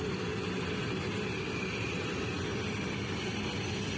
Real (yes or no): yes